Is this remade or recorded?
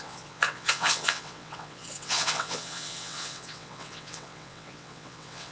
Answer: remade